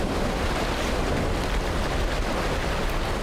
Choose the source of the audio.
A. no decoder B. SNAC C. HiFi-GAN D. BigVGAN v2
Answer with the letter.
A